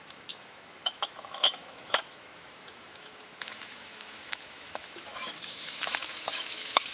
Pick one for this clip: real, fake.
fake